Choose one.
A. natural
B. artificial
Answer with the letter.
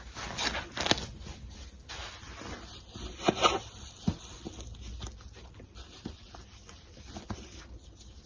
A